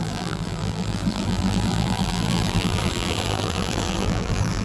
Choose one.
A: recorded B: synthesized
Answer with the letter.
B